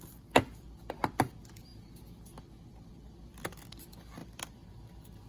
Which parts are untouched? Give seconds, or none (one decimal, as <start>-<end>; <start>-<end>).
0.0-5.3